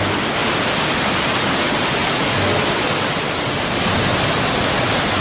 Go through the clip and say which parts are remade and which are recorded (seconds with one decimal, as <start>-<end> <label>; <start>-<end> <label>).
0.0-5.2 recorded